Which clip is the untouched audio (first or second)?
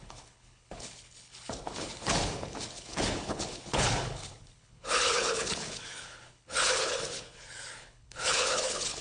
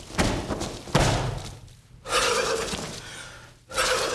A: second